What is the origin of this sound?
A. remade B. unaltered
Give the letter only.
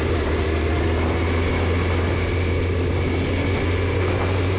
B